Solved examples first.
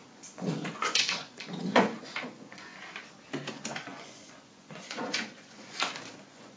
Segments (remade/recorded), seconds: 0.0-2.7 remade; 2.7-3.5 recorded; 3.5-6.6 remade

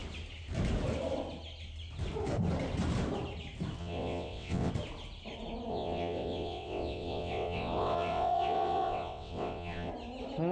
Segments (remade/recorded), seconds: 0.0-3.8 recorded; 3.8-4.7 remade; 4.7-5.7 recorded; 5.7-9.9 remade; 9.9-10.5 recorded

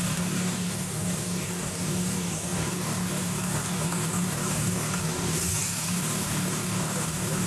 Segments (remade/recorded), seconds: 0.0-7.5 remade

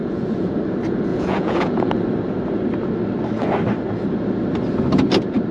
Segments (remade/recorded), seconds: 0.0-0.6 remade; 0.6-1.1 recorded; 1.1-1.9 remade; 1.9-5.5 recorded